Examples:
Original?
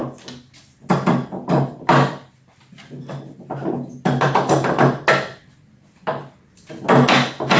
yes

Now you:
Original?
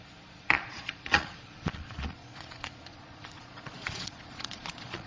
no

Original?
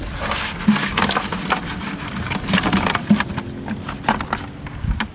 yes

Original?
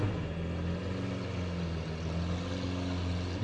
yes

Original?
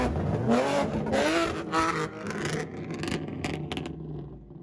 yes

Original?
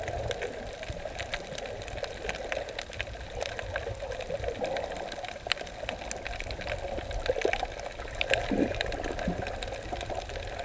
yes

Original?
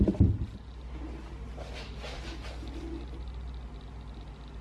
yes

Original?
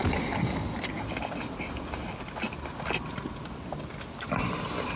yes